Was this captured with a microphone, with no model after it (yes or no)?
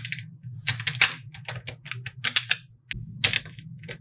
yes